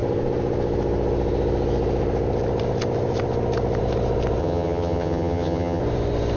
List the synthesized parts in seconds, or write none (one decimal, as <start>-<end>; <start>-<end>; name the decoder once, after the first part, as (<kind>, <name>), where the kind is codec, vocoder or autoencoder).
4.4-5.8 (vocoder, HiFi-GAN)